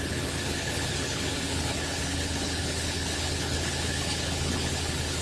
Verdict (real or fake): fake